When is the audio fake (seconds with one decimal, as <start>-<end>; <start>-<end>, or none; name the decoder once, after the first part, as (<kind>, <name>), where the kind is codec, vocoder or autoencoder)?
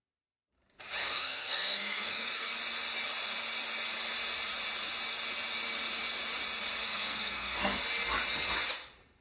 1.0-2.5 (codec, SNAC); 6.8-7.8